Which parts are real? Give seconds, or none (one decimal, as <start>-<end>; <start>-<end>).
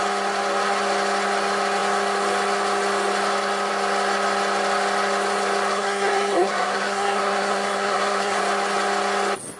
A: 0.0-5.7; 8.4-9.6